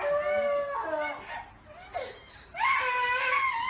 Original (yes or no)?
yes